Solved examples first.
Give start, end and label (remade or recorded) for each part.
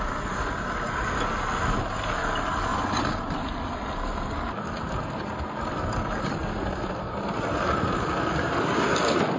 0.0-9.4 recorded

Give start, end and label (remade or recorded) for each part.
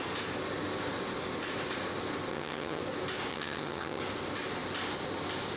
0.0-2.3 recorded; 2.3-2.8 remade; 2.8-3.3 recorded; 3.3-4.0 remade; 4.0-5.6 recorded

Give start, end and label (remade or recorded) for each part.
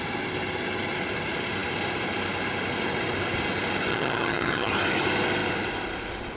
0.0-3.9 recorded; 3.9-4.7 remade; 4.7-6.4 recorded